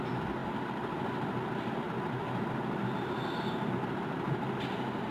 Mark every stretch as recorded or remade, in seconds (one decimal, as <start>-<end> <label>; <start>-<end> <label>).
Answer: 0.0-5.1 recorded